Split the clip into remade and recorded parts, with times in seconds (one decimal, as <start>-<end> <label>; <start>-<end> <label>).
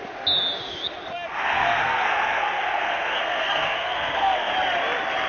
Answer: 0.0-1.3 recorded; 1.3-4.5 remade; 4.5-5.3 recorded